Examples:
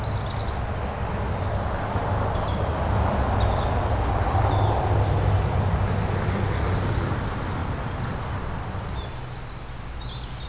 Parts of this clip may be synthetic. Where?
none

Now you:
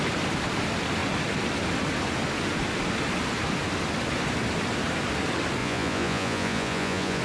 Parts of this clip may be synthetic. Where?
5.6-7.2 (vocoder, Vocos)

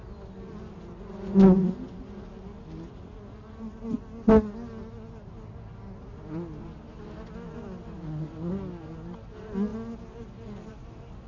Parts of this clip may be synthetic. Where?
none

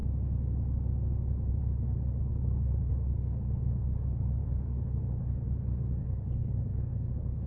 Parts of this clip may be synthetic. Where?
1.5-7.5 (codec, HILCodec)

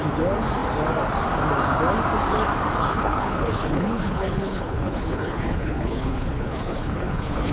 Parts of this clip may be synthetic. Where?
2.8-7.5 (codec, HILCodec)

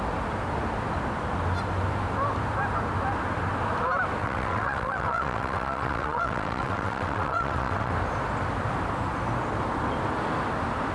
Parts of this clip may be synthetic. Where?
4.2-7.9 (vocoder, WaveNeXt)

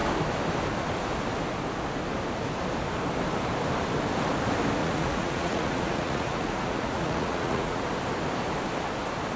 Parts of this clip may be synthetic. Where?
4.8-7.8 (vocoder, Vocos)